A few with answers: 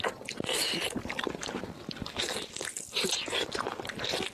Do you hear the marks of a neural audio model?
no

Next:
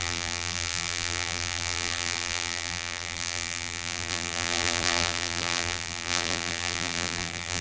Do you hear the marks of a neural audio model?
yes